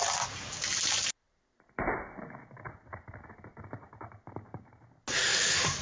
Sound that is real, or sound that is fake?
real